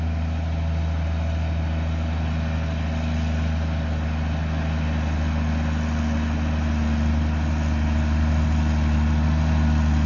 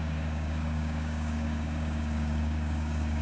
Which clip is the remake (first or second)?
second